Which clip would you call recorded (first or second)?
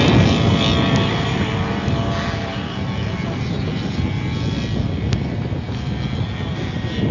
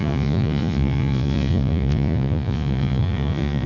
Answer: first